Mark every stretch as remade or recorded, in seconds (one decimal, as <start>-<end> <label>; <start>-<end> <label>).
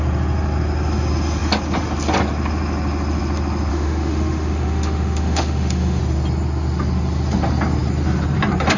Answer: 0.0-3.7 recorded; 3.7-6.0 remade; 6.0-8.8 recorded